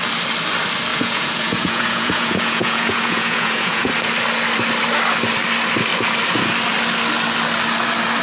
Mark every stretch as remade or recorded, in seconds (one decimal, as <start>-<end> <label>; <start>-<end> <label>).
0.0-0.9 recorded; 0.9-3.9 remade; 3.9-8.2 recorded